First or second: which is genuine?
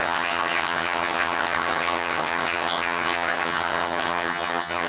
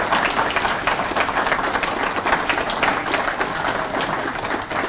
second